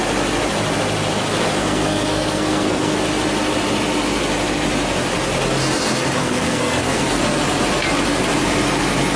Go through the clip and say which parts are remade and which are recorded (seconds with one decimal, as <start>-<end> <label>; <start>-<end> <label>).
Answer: 0.0-1.6 recorded; 1.6-3.0 remade; 3.0-6.2 recorded; 6.2-7.2 remade; 7.2-9.2 recorded

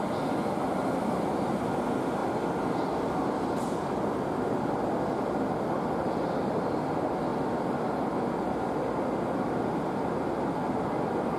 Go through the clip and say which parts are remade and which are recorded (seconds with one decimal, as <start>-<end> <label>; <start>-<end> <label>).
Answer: 0.0-11.4 recorded

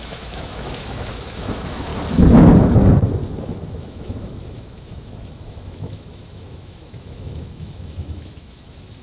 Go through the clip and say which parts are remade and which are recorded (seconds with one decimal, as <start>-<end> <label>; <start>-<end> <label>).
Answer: 0.0-1.9 remade; 1.9-3.4 recorded; 3.4-9.0 remade

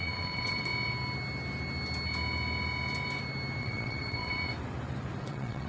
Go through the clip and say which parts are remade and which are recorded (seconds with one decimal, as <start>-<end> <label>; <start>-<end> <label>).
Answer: 0.0-0.7 remade; 0.7-3.6 recorded; 3.6-4.5 remade; 4.5-5.2 recorded; 5.2-5.7 remade

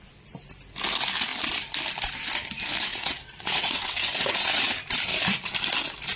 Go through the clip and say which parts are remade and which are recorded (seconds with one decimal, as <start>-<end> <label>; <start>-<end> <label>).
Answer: 0.0-2.9 recorded; 2.9-4.6 remade; 4.6-6.2 recorded